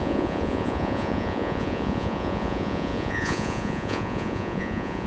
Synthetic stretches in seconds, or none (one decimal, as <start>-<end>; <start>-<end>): 0.0-5.1